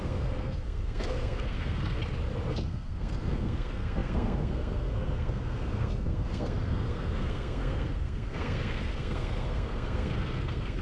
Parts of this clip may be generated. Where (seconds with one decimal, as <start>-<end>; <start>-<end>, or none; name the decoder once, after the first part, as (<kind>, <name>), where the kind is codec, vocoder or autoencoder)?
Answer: 0.0-2.0 (codec, SNAC); 2.5-10.8